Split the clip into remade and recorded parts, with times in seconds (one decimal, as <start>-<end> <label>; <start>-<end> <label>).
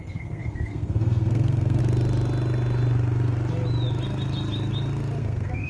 0.0-1.8 remade; 1.8-5.2 recorded; 5.2-5.7 remade